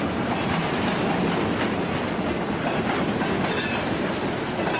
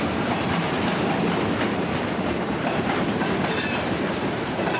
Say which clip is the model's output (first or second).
second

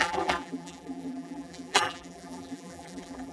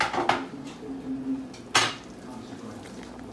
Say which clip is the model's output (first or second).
first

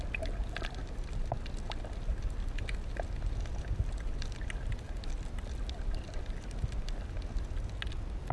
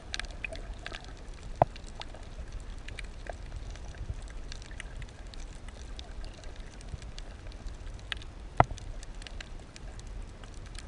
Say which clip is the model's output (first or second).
second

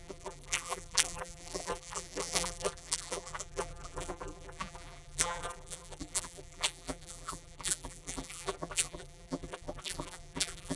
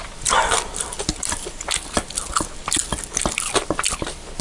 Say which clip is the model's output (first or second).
first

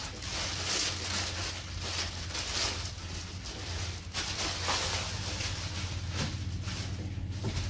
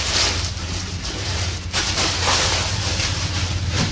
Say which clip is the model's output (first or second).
second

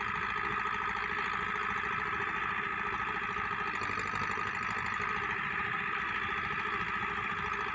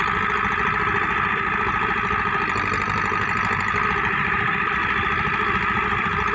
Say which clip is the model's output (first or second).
second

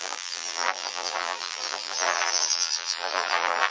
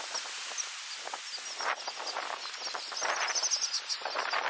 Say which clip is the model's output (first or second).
first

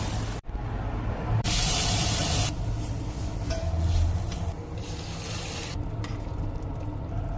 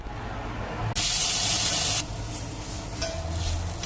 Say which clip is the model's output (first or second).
first